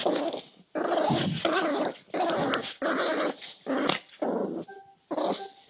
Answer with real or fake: real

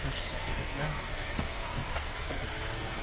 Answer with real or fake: fake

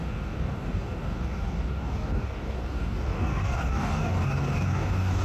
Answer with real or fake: fake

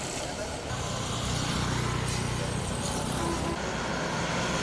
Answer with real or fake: real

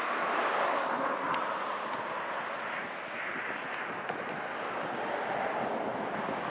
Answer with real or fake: real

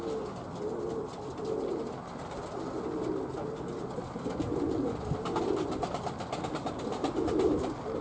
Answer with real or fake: real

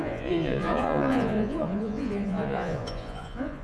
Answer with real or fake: fake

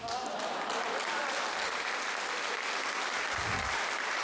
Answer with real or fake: real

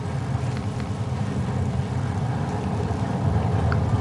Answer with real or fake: fake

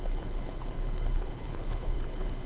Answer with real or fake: fake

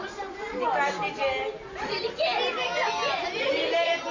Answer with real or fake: real